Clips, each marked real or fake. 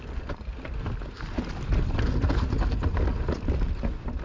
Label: real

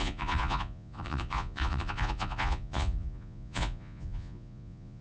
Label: fake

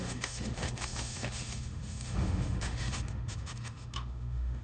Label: fake